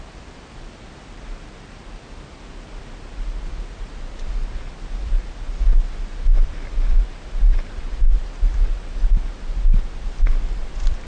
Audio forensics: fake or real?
real